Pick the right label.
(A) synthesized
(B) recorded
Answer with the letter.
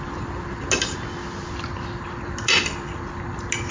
B